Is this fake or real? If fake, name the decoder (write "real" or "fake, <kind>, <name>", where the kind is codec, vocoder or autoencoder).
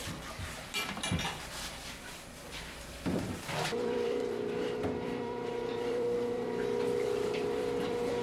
fake, vocoder, BigVGAN v2